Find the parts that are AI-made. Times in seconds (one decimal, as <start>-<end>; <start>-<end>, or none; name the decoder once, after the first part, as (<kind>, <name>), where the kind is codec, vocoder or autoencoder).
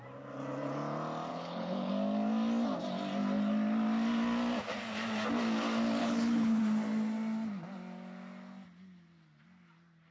1.3-1.9 (codec, HILCodec); 6.0-6.6